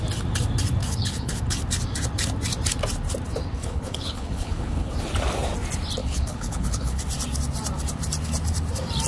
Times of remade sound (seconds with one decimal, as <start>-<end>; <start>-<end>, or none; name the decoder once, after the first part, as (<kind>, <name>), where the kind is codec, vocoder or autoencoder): 0.8-1.4 (codec, HILCodec); 3.6-4.9; 6.0-7.0

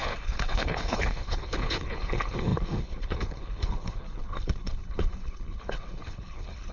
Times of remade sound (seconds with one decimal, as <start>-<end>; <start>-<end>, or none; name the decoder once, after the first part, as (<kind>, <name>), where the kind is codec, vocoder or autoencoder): 0.0-6.7 (codec, HILCodec)

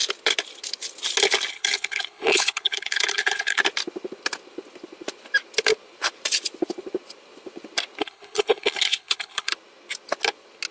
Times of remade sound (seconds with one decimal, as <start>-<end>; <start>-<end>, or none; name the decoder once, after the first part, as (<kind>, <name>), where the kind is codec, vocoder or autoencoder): 1.5-3.6 (codec, HILCodec); 8.0-9.5

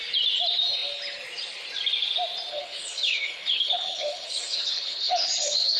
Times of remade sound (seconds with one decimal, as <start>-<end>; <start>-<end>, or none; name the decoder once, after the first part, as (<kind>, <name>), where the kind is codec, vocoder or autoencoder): 2.5-5.8 (codec, HILCodec)

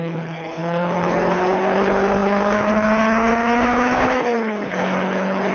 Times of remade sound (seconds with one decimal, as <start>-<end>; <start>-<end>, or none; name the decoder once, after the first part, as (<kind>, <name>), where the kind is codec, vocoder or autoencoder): 0.0-5.5 (codec, HILCodec)

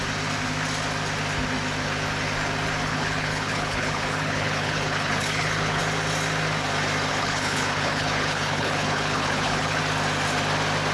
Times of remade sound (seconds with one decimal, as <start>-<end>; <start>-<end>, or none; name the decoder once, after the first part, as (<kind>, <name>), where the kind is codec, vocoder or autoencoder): 2.9-5.8 (codec, HILCodec); 7.1-9.8

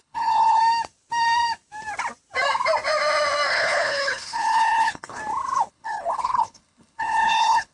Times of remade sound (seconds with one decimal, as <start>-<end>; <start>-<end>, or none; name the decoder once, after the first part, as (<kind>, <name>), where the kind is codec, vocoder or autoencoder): 0.0-0.6 (codec, HILCodec); 3.5-5.2; 5.7-7.7

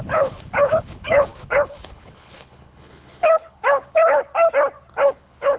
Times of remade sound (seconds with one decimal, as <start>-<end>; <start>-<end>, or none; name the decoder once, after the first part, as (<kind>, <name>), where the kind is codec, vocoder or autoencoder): 0.0-4.2 (codec, HILCodec); 4.9-5.6